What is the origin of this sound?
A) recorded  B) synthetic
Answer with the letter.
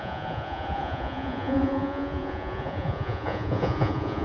B